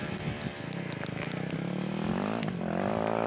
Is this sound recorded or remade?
recorded